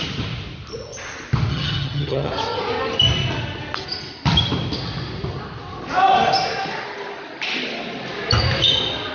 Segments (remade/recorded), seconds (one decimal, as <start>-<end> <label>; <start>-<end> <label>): 0.0-1.5 recorded; 1.5-2.3 remade; 2.3-9.1 recorded